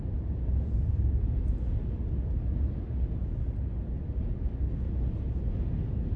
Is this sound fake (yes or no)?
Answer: no